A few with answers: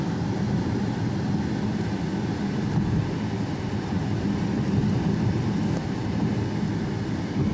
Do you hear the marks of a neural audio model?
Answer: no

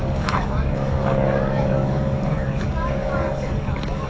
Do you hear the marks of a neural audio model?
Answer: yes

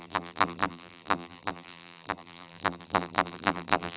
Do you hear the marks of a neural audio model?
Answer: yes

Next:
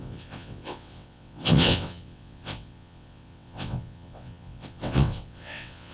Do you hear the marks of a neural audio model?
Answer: yes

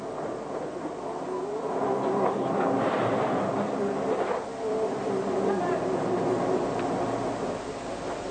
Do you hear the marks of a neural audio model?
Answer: no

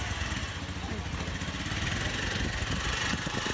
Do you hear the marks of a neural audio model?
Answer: no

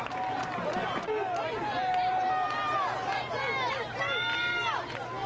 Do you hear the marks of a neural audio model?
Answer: no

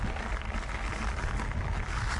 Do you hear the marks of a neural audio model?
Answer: no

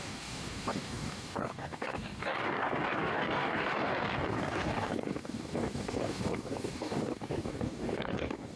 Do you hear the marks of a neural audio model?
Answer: yes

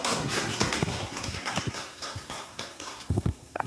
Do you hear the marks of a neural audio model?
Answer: yes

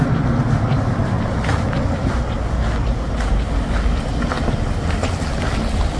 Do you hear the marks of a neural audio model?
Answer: no